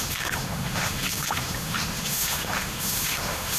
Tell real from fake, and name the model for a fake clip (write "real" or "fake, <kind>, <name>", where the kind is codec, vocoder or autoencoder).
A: fake, autoencoder, DAC-VAE